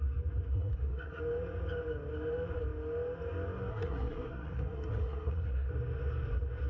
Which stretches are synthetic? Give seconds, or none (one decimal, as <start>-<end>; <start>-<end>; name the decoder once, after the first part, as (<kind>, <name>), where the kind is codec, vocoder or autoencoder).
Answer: 0.5-1.2 (codec, SNAC); 3.7-5.7